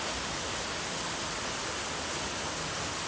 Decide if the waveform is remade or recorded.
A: recorded